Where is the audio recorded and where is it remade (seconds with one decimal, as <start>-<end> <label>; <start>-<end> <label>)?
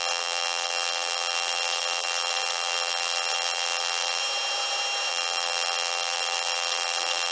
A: 0.0-4.2 remade; 4.2-5.1 recorded; 5.1-7.3 remade